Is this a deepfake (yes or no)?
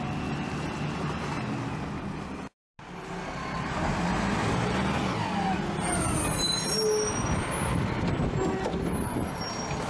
no